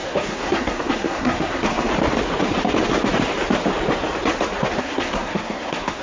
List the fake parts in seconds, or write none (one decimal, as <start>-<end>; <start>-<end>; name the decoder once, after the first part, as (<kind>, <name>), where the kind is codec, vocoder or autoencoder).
0.0-1.9 (codec, SNAC); 4.8-6.0